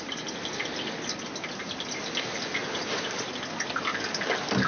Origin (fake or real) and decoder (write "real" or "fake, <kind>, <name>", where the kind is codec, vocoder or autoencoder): real